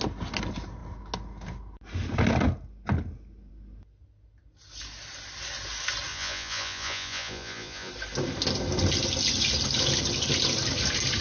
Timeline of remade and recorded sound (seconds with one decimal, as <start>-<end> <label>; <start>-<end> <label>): 0.0-6.1 recorded; 6.1-7.9 remade; 7.9-11.2 recorded